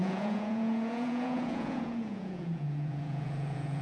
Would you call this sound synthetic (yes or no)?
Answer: yes